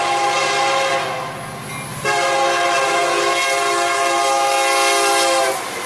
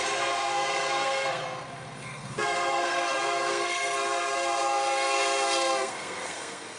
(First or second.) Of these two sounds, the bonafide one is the first